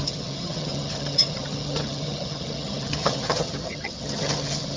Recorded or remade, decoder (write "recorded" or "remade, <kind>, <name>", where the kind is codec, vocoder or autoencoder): remade, vocoder, HiFi-GAN